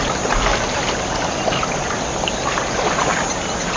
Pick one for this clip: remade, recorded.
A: recorded